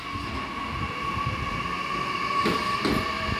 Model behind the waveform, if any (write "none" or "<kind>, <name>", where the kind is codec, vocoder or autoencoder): none